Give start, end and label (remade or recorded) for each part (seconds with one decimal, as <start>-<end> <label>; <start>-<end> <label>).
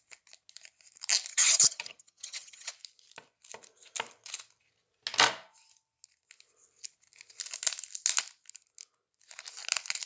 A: 0.0-1.3 recorded; 1.3-2.7 remade; 2.7-10.1 recorded